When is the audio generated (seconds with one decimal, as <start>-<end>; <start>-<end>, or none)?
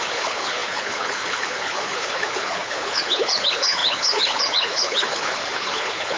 0.0-6.2